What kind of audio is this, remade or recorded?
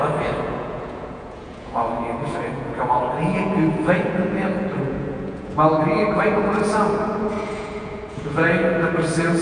remade